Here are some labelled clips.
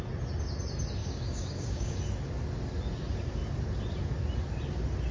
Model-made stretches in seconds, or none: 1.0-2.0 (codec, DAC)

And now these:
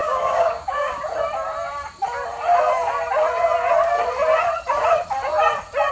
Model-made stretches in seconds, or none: 0.0-1.0 (codec, DAC)

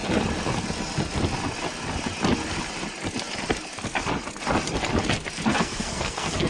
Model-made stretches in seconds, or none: 5.5-6.5 (codec, SNAC)

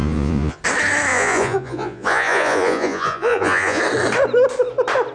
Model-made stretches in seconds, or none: 0.0-0.6 (vocoder, Vocos); 1.1-3.8

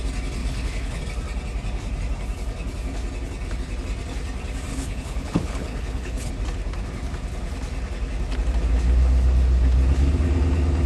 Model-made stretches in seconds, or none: 0.4-1.0 (codec, HILCodec); 4.7-6.3

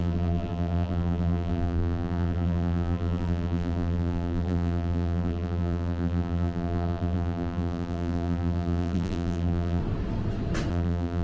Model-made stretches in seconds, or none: 0.0-9.8 (vocoder, BigVGAN v2); 10.7-11.2